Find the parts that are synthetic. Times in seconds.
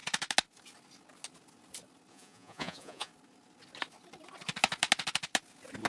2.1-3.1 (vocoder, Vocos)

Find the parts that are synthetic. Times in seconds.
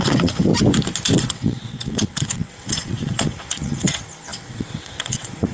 0.0-0.5 (vocoder, WaveNeXt); 1.2-5.5